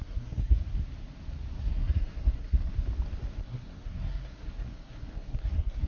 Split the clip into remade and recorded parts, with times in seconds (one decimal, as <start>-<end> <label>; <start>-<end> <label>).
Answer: 0.0-0.6 remade; 0.6-1.5 recorded; 1.5-2.7 remade; 2.7-3.4 recorded; 3.4-5.9 remade